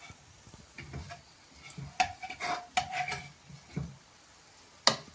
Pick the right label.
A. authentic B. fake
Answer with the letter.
A